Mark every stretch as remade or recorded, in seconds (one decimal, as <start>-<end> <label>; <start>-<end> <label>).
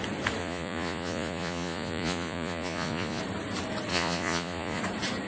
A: 0.0-0.4 recorded; 0.4-3.2 remade; 3.2-3.9 recorded; 3.9-4.8 remade; 4.8-5.3 recorded